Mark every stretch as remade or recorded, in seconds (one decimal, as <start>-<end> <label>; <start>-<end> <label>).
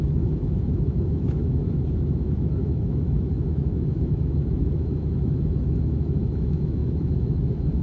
0.0-7.8 remade